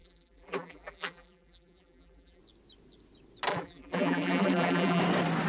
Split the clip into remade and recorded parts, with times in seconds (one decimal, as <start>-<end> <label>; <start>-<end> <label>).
0.0-2.4 remade; 2.4-3.5 recorded; 3.5-5.0 remade; 5.0-5.5 recorded